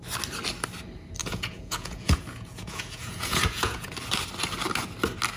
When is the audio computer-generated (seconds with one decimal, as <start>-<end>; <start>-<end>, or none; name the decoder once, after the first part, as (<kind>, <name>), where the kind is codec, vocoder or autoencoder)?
1.2-3.9 (vocoder, Vocos)